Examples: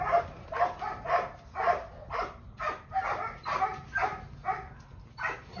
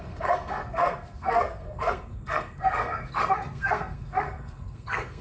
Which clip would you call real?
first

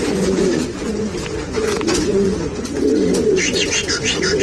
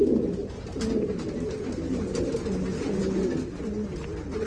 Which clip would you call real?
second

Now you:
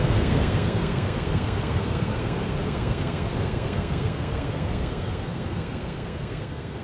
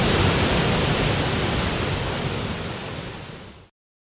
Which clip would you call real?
second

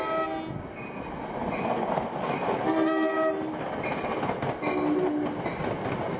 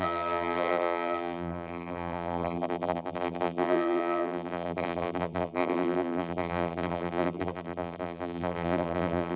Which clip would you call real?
first